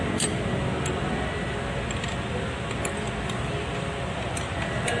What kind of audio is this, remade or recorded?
recorded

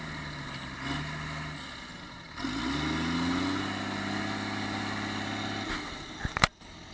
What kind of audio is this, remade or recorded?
recorded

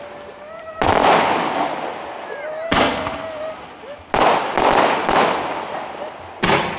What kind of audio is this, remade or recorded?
recorded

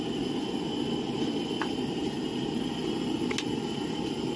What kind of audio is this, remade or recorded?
recorded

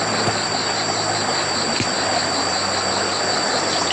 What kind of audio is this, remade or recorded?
recorded